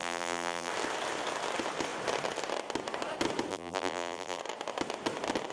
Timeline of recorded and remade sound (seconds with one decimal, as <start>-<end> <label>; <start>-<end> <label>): 0.0-0.7 remade; 0.7-3.5 recorded; 3.5-4.4 remade; 4.4-5.5 recorded